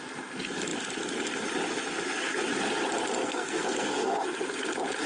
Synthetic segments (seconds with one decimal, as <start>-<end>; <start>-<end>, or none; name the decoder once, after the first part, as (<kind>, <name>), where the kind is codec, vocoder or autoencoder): 3.2-4.2 (codec, SNAC)